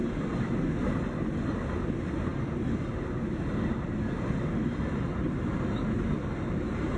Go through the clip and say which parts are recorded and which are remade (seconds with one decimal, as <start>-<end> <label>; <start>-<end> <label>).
0.0-7.0 recorded